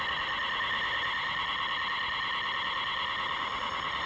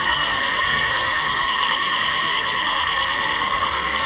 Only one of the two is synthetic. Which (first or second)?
second